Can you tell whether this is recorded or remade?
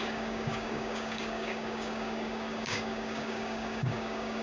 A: remade